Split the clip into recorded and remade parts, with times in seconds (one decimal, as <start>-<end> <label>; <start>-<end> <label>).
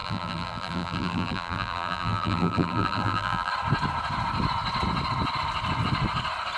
0.0-3.5 remade; 3.5-6.6 recorded